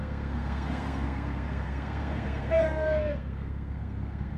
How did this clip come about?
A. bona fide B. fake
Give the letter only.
B